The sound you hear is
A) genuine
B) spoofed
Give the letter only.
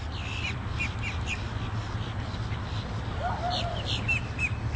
A